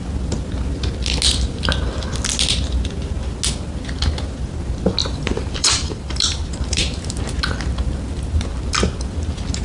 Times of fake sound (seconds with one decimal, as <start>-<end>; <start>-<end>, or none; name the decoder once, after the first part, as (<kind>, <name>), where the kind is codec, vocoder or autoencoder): 5.0-7.2 (vocoder, BigVGAN v2)